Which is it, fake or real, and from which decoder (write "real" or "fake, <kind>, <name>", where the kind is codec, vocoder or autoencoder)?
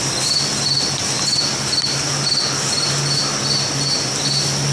real